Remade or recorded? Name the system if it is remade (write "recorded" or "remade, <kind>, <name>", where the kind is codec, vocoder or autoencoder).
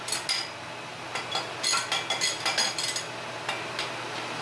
recorded